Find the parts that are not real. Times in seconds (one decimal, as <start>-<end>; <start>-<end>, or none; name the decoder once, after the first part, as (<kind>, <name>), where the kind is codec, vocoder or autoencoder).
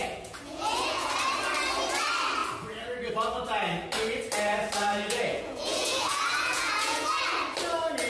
0.0-1.1 (vocoder, Vocos); 4.9-7.2